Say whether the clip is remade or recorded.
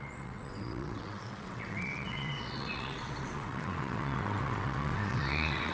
remade